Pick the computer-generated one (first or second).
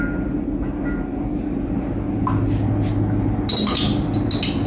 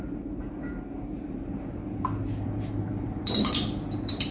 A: second